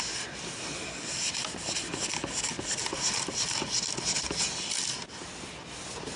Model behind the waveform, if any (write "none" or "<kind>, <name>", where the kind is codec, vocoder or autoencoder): none